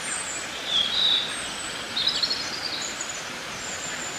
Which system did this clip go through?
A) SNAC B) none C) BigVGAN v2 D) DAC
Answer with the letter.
B